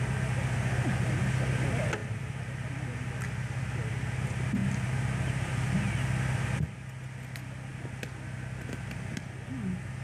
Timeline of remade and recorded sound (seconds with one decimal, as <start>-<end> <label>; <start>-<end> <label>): 0.0-2.0 recorded; 2.0-3.1 remade; 3.1-4.6 recorded; 4.6-5.5 remade; 5.5-10.0 recorded